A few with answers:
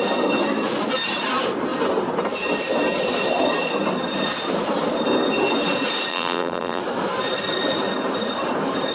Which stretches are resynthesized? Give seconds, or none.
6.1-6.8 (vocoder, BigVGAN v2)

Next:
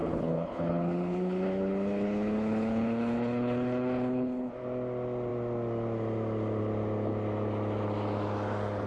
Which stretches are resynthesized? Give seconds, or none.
0.0-4.5 (codec, HILCodec)

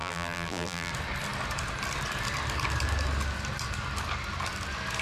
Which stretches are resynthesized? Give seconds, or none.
0.0-0.9 (vocoder, BigVGAN v2)